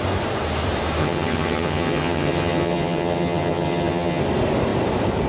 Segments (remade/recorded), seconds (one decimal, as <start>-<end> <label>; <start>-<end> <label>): 0.0-1.0 recorded; 1.0-4.2 remade; 4.2-5.3 recorded